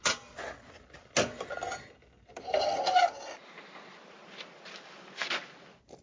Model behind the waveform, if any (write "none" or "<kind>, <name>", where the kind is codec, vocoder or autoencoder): none